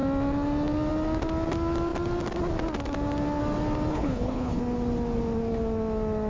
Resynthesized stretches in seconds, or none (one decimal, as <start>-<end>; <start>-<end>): 3.9-4.6